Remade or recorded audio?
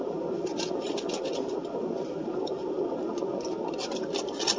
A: recorded